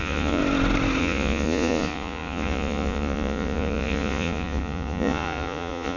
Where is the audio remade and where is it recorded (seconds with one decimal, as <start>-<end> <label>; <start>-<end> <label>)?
0.0-0.4 remade; 0.4-1.0 recorded; 1.0-6.0 remade